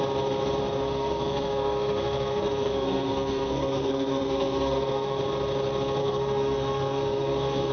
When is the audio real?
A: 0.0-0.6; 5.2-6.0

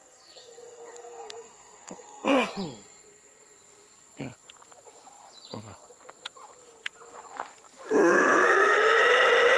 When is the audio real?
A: 2.5-8.1; 9.0-9.6

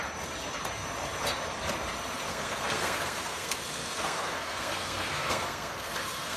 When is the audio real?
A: 0.0-2.3